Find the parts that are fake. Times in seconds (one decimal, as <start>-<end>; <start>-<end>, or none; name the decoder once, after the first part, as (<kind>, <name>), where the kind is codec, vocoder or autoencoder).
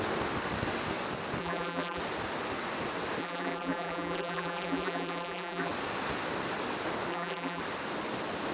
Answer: 1.4-2.0 (vocoder, BigVGAN v2); 3.2-5.7; 7.1-7.6